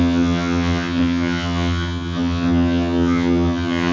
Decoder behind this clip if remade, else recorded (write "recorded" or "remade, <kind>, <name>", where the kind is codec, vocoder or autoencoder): remade, vocoder, HiFi-GAN